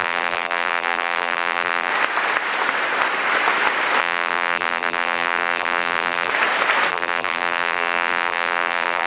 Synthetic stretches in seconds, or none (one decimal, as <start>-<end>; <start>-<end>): 0.0-1.9; 4.0-6.3; 6.9-9.1